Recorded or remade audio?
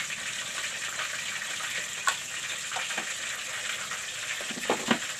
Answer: recorded